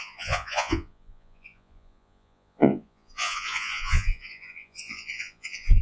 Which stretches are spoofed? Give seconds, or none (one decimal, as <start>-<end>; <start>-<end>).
0.0-5.8